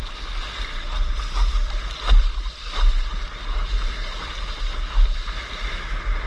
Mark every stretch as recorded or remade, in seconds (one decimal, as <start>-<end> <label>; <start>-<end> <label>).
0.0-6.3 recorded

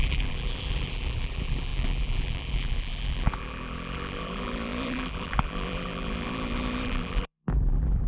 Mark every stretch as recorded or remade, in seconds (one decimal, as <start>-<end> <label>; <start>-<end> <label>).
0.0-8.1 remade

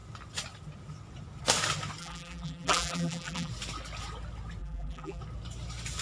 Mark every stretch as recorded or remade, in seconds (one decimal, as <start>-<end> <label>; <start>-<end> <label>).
0.0-2.0 recorded; 2.0-3.5 remade; 3.5-4.6 recorded; 4.6-5.2 remade; 5.2-6.0 recorded